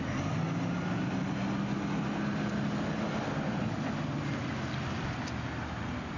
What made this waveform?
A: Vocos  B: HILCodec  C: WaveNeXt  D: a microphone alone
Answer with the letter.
D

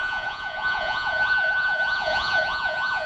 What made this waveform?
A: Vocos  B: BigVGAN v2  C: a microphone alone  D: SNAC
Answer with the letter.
A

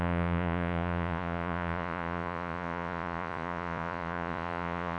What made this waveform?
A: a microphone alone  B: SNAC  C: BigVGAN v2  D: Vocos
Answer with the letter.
D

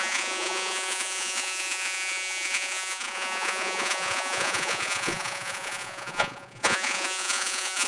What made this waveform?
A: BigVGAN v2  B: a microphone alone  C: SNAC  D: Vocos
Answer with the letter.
D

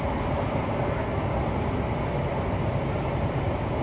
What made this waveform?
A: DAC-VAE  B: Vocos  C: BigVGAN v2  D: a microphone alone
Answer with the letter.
D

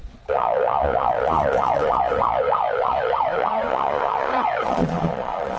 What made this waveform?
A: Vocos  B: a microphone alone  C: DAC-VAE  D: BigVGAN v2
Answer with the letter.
A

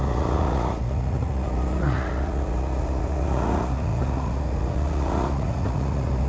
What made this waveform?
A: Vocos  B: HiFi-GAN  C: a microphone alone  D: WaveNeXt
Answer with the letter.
A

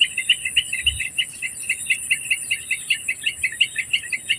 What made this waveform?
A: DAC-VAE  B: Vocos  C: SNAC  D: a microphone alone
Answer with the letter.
D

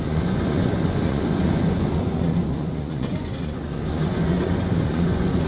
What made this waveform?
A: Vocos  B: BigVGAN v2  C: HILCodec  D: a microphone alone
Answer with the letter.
A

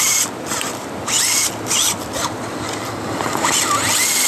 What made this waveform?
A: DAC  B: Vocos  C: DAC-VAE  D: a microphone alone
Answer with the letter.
D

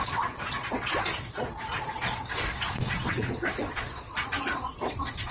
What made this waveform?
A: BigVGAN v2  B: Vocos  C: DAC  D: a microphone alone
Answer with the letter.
B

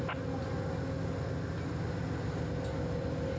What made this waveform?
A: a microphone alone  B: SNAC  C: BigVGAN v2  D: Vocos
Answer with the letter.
A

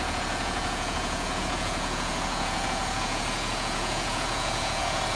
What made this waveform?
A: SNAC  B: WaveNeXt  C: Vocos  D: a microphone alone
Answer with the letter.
C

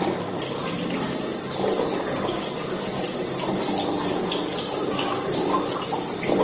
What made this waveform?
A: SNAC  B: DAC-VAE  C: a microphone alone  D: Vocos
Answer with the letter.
C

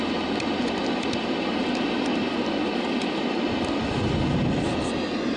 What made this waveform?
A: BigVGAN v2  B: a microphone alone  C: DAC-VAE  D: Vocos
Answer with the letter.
B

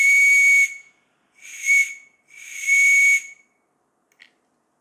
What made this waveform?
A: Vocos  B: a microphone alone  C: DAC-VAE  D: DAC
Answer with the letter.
B